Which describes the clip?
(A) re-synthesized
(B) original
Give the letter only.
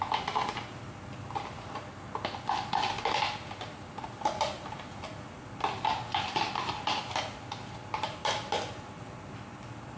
B